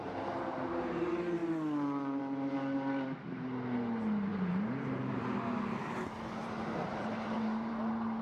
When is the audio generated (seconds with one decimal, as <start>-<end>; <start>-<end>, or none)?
4.3-7.7